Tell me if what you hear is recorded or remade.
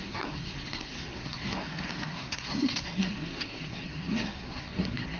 remade